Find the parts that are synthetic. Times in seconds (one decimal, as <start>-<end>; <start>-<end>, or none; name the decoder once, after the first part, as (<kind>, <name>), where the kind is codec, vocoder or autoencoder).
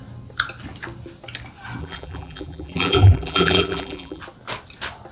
1.8-4.2 (vocoder, BigVGAN v2)